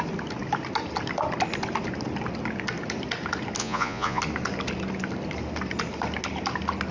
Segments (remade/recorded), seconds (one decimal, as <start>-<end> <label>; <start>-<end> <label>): 0.0-3.6 recorded; 3.6-4.2 remade; 4.2-6.9 recorded